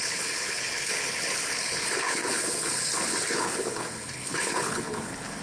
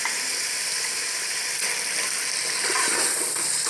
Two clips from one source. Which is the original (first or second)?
second